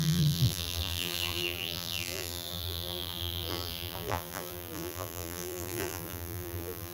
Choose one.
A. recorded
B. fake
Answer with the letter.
B